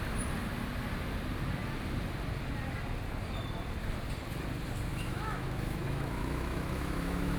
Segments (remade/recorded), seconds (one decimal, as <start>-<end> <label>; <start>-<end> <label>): 0.0-4.9 recorded; 4.9-7.4 remade